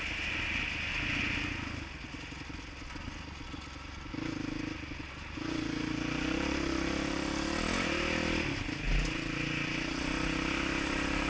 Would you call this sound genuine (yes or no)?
yes